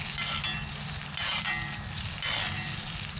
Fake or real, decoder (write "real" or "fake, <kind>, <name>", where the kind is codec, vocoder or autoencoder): real